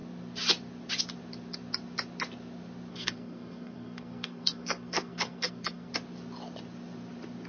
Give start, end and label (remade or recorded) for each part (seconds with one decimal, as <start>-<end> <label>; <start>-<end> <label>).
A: 0.0-2.9 recorded; 2.9-5.9 remade; 5.9-7.5 recorded